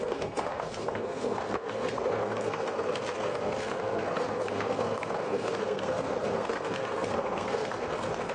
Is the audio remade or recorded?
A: remade